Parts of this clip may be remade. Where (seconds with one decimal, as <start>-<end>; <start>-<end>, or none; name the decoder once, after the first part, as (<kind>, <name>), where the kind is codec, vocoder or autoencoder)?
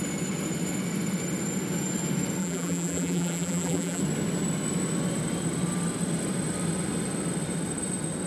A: 2.4-4.0 (vocoder, BigVGAN v2)